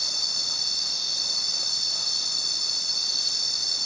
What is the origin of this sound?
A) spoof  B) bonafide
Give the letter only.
A